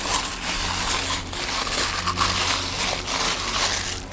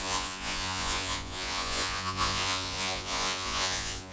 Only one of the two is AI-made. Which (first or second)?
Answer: second